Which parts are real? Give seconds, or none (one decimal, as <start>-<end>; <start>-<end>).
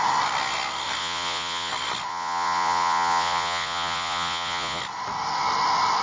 0.0-1.0; 1.7-2.1; 4.8-6.0